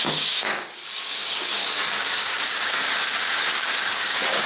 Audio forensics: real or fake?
fake